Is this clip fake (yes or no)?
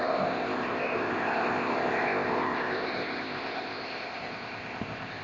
yes